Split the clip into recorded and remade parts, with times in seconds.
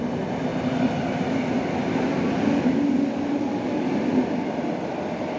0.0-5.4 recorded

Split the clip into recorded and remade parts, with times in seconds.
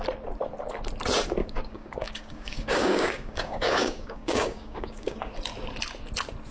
0.0-1.4 recorded; 1.4-5.3 remade; 5.3-6.5 recorded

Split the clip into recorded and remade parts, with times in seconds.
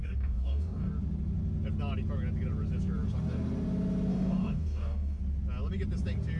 0.0-0.9 remade; 0.9-4.1 recorded; 4.1-5.2 remade; 5.2-6.4 recorded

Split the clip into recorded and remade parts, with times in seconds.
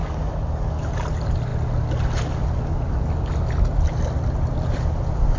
0.0-0.9 remade; 0.9-5.4 recorded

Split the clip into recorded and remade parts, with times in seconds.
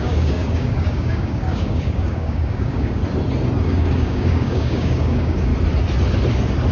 0.0-3.0 remade; 3.0-3.6 recorded; 3.6-5.5 remade; 5.5-6.7 recorded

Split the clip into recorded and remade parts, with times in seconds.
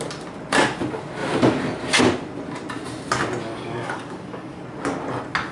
0.0-3.4 recorded; 3.4-4.6 remade; 4.6-5.5 recorded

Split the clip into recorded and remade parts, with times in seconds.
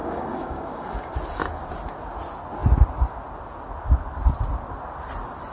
0.0-1.1 remade; 1.1-5.5 recorded